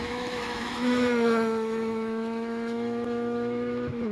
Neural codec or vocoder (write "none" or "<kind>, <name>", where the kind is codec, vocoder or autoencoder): autoencoder, DAC-VAE